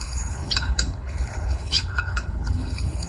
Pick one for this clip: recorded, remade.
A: remade